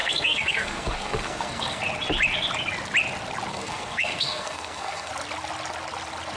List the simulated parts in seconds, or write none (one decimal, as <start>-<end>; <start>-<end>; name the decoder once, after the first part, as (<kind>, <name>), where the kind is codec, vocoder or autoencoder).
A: 0.0-1.8 (codec, SNAC); 3.5-5.1